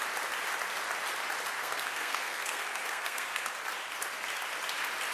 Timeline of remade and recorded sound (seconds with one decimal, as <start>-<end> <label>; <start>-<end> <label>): 0.0-1.6 recorded; 1.6-3.5 remade; 3.5-5.1 recorded

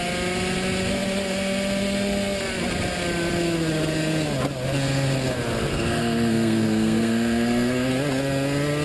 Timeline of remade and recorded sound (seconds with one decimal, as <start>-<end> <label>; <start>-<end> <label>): 0.0-5.7 recorded; 5.7-7.9 remade; 7.9-8.8 recorded

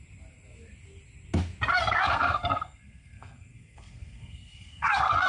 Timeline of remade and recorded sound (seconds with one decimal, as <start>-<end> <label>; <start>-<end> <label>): 0.0-1.7 recorded; 1.7-5.3 remade

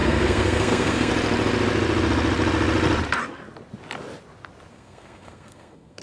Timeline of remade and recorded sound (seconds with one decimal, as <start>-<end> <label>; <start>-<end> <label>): 0.0-1.1 remade; 1.1-4.7 recorded; 4.7-6.0 remade

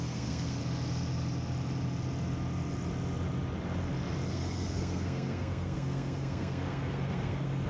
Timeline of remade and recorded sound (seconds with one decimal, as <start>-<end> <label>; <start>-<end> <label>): 0.0-0.6 remade; 0.6-4.3 recorded; 4.3-7.7 remade

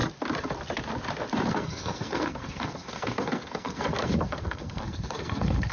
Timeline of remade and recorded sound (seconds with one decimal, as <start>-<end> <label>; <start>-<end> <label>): 0.0-1.5 recorded; 1.5-5.7 remade